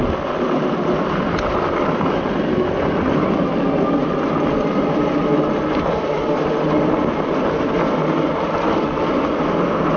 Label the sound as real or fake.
real